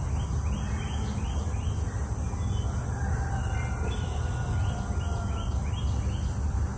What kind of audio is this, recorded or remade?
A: recorded